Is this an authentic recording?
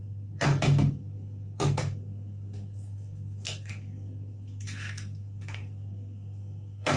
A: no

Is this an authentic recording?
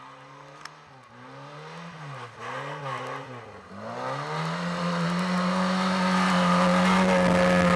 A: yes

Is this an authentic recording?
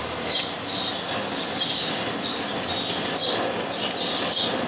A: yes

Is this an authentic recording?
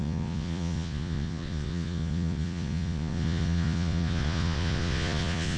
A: no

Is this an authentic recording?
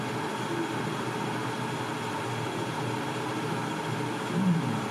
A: yes